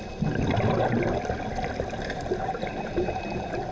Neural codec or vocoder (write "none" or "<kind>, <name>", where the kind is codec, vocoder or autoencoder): none